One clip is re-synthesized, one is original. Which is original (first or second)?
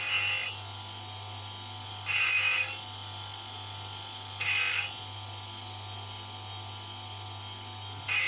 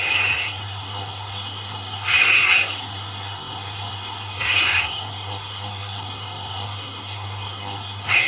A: first